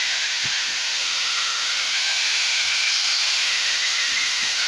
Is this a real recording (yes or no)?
no